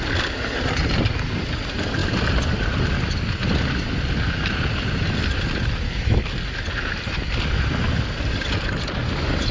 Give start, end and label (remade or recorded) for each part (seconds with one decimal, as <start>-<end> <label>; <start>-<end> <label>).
0.0-9.5 recorded